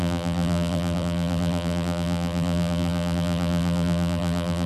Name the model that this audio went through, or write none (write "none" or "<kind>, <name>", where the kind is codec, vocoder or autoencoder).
vocoder, BigVGAN v2